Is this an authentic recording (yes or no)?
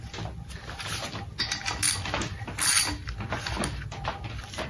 yes